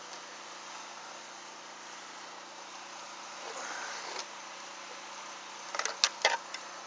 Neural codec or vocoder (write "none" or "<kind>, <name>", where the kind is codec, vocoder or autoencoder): none